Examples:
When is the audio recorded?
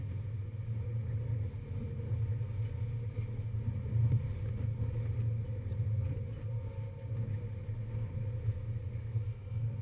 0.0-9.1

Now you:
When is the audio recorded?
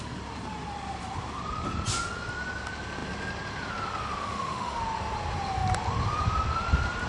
0.0-4.2; 4.8-7.1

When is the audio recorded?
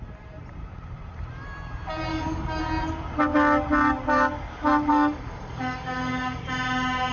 0.0-2.1; 2.6-4.9; 6.4-7.1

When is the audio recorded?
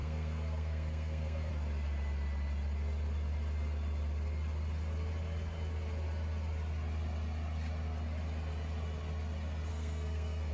1.5-9.7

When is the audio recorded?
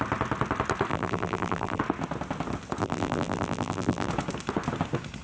0.0-0.9; 1.8-2.8; 4.1-5.2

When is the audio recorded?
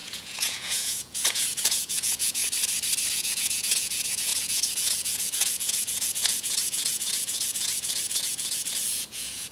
2.4-3.1